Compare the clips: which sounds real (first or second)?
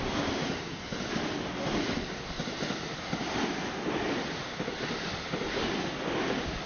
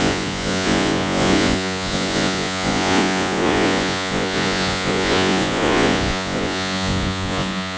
first